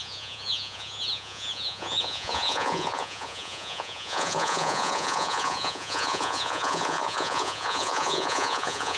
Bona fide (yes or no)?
no